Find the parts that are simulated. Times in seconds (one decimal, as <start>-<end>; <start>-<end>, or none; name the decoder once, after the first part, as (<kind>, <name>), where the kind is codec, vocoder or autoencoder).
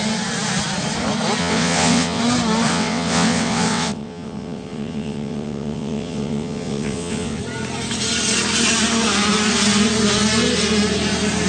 1.4-2.2 (vocoder, WaveNeXt); 2.7-7.4